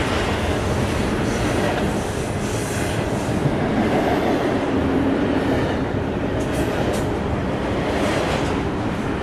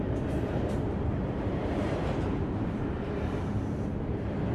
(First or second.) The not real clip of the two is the second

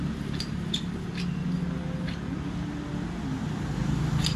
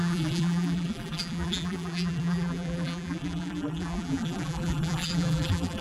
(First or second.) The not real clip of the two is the second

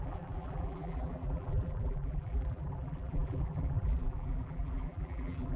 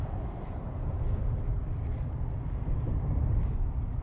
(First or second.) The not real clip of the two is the first